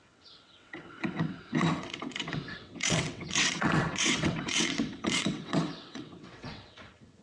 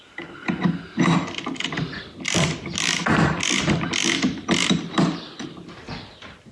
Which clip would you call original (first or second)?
second